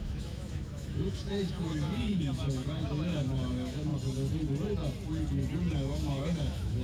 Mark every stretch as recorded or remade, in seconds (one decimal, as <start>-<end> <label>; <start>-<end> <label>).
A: 0.0-3.9 remade; 3.9-5.7 recorded; 5.7-6.8 remade